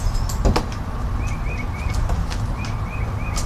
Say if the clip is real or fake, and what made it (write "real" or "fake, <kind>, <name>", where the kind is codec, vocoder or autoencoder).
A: real